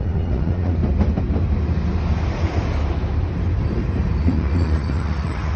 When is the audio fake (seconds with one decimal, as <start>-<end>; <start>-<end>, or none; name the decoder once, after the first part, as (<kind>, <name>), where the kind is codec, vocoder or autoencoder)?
0.0-0.8 (vocoder, Vocos); 4.2-5.6